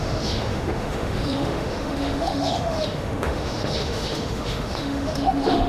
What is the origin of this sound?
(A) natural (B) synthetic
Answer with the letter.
B